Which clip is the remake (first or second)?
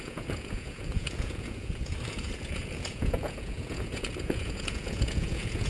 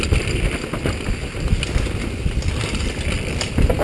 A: first